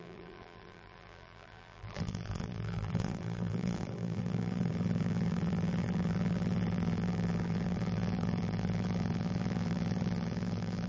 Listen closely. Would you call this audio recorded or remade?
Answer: remade